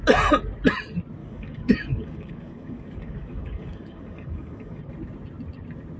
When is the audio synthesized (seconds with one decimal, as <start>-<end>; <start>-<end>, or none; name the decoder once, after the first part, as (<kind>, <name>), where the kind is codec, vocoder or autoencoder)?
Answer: 1.2-4.8 (codec, DAC)